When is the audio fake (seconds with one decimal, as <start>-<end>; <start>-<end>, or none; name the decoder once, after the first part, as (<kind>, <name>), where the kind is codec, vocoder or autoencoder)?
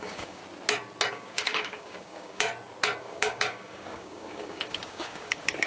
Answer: 0.0-0.4 (codec, DAC); 1.1-2.5; 3.0-5.7